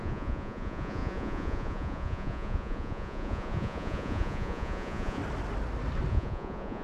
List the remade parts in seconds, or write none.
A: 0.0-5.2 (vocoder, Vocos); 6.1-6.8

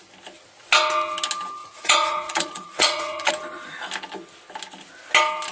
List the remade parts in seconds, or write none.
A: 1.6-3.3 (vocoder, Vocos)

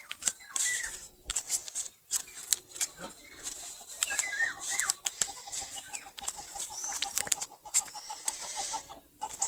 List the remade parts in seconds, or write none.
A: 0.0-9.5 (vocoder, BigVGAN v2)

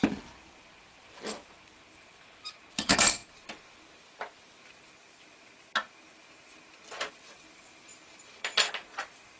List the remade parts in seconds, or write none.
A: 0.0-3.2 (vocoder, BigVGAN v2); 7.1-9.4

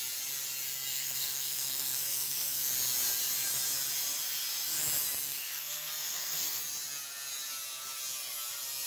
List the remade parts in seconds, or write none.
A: 0.9-2.7 (codec, SNAC); 5.3-6.6

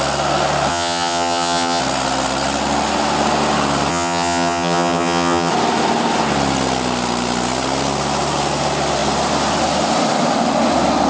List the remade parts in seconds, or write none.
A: 0.7-1.8 (vocoder, HiFi-GAN); 3.9-5.5